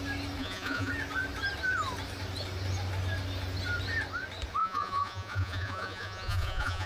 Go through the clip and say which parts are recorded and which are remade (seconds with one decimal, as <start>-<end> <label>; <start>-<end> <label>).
0.0-0.4 recorded; 0.4-0.9 remade; 0.9-4.6 recorded; 4.6-6.9 remade